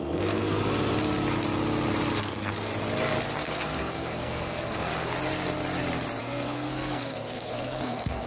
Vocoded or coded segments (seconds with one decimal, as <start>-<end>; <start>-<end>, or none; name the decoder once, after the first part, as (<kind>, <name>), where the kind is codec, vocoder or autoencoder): 0.0-0.6 (codec, SNAC); 2.2-2.7; 3.4-4.9; 6.2-8.3